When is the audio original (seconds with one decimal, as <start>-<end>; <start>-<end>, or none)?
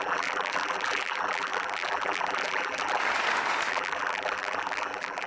3.0-3.7